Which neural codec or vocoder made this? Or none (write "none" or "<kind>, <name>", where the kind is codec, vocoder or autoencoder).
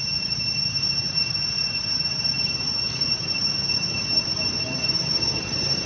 vocoder, BigVGAN v2